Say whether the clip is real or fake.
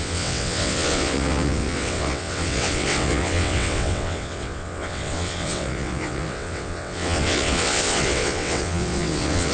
fake